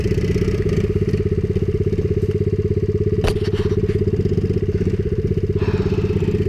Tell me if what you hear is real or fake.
real